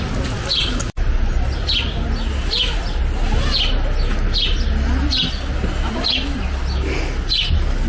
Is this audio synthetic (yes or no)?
no